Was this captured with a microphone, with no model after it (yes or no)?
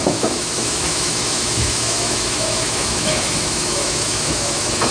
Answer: no